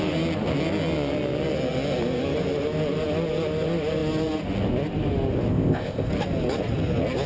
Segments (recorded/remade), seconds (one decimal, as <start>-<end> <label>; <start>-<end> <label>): 0.0-5.5 recorded; 5.5-6.1 remade; 6.1-7.3 recorded